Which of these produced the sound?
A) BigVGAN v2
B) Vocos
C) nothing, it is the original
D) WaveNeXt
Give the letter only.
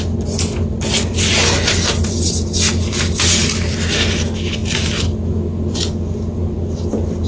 C